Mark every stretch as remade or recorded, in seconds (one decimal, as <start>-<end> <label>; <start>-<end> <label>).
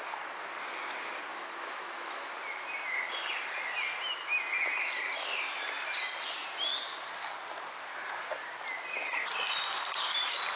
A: 0.0-1.3 recorded; 1.3-2.3 remade; 2.3-10.6 recorded